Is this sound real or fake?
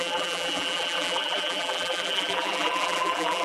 fake